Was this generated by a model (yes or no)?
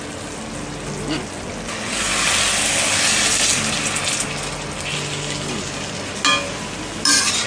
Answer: no